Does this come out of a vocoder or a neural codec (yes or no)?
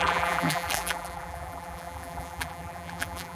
yes